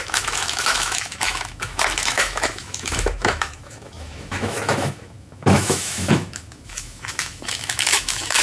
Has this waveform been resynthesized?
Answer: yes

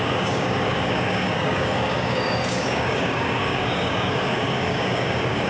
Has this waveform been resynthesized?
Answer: yes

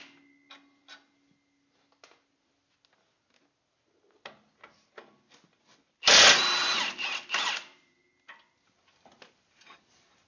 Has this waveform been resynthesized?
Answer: no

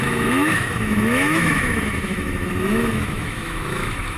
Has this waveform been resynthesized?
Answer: yes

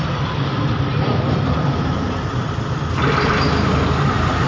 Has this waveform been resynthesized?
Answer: no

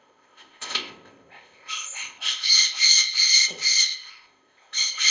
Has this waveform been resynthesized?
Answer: yes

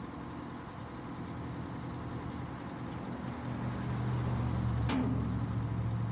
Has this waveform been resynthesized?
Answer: no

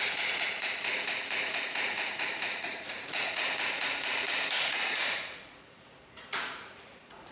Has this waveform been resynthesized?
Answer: yes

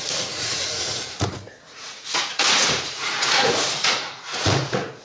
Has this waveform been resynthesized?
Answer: yes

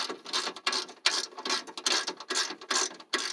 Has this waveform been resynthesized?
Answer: no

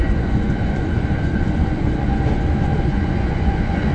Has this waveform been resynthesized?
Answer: yes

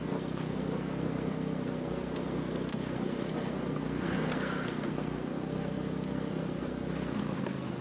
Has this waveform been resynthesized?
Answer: yes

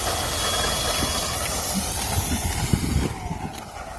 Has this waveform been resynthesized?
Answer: no